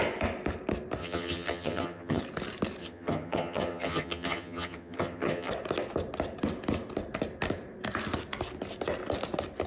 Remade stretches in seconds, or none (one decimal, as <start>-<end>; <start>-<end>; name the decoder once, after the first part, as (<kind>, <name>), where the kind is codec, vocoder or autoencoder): 1.0-2.2 (vocoder, HiFi-GAN); 2.8-5.5